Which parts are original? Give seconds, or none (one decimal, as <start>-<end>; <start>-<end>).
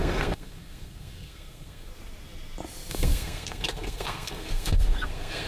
1.9-2.9